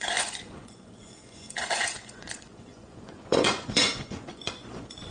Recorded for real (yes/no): no